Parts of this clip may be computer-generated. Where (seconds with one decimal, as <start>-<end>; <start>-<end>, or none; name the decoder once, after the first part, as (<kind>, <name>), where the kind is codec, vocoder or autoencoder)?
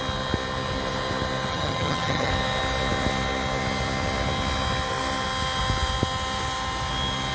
1.5-2.3 (vocoder, HiFi-GAN)